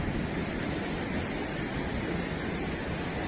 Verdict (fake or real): real